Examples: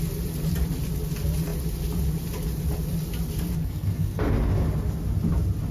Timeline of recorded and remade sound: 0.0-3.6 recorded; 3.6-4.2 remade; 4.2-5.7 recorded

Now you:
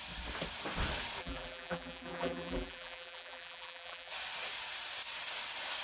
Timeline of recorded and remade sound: 0.0-1.2 recorded; 1.2-4.1 remade; 4.1-5.8 recorded

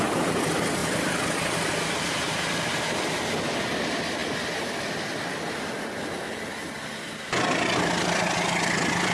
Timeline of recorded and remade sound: 0.0-9.1 recorded

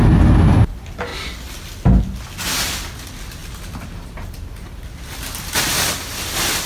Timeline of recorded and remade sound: 0.0-6.7 recorded

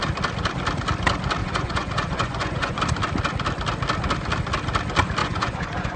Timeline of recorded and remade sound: 0.0-1.4 recorded; 1.4-2.8 remade; 2.8-5.2 recorded; 5.2-6.0 remade

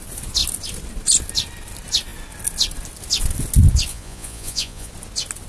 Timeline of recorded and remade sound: 0.0-3.9 recorded; 3.9-4.9 remade; 4.9-5.5 recorded

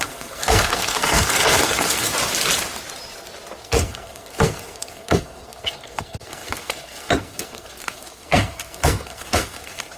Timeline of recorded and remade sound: 0.0-2.1 remade; 2.1-3.6 recorded; 3.6-10.0 remade

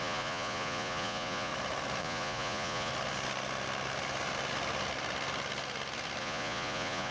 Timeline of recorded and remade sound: 0.0-1.5 remade; 1.5-2.0 recorded; 2.0-2.9 remade; 2.9-6.2 recorded; 6.2-7.1 remade